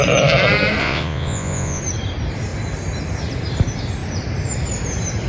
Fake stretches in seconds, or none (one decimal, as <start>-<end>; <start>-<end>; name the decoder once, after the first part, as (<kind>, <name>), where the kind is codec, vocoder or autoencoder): 0.8-1.8 (vocoder, Vocos)